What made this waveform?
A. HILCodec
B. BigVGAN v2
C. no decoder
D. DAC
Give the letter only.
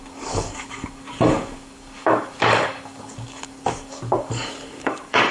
D